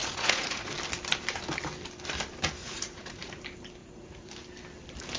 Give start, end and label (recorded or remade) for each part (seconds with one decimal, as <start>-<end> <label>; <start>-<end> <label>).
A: 0.0-0.7 remade; 0.7-2.6 recorded; 2.6-3.3 remade; 3.3-3.8 recorded; 3.8-4.3 remade; 4.3-5.2 recorded